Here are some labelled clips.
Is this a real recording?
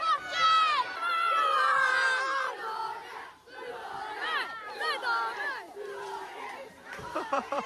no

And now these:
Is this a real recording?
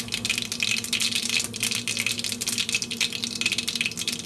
yes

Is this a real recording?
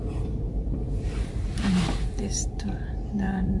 no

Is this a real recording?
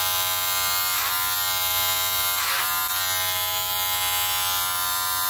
yes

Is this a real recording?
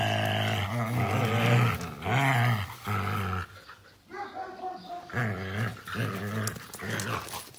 yes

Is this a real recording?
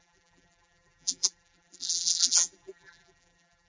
no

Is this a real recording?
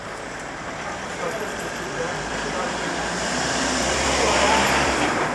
no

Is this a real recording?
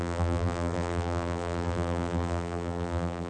no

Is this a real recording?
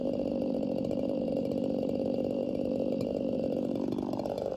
no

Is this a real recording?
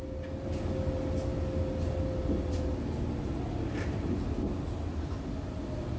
yes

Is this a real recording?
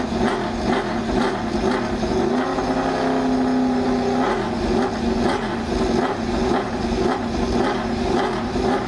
yes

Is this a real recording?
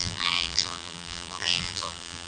no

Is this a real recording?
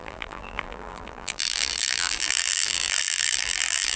no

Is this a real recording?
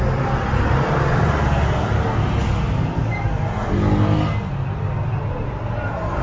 yes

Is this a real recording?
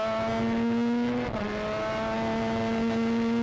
yes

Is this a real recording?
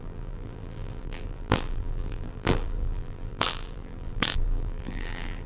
no